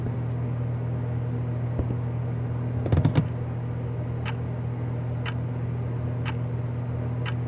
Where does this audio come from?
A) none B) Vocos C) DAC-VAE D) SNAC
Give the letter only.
A